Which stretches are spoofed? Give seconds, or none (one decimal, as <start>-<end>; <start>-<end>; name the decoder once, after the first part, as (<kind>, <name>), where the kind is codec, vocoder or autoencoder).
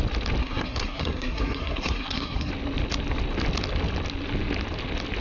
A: 0.4-2.5 (codec, SNAC)